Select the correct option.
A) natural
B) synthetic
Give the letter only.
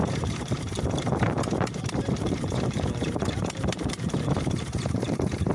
B